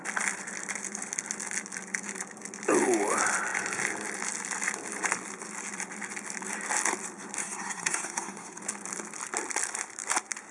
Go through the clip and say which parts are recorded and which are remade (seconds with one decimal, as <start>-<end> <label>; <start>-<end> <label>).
0.0-7.4 recorded; 7.4-8.6 remade; 8.6-10.5 recorded